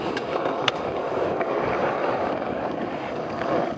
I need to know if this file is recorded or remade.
remade